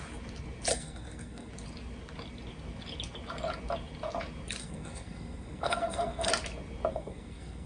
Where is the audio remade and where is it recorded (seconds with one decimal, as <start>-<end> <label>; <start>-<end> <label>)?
0.0-0.7 recorded; 0.7-1.5 remade; 1.5-4.6 recorded; 4.6-6.3 remade; 6.3-6.9 recorded; 6.9-7.7 remade